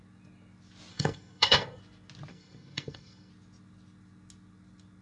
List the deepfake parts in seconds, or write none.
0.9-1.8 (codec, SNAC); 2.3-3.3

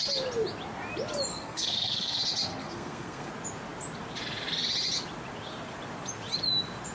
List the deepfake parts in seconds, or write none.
1.3-2.2 (codec, SNAC); 2.6-3.3

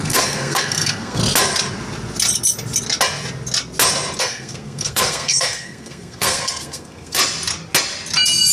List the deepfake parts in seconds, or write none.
0.0-1.2 (codec, SNAC); 4.2-7.2

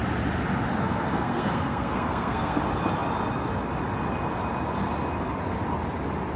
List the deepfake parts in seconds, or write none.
0.8-2.6 (codec, SNAC)

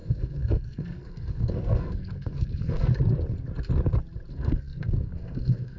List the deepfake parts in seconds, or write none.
0.0-2.9 (codec, SNAC); 4.3-5.8

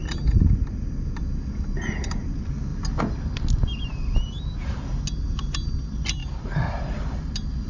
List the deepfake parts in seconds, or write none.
none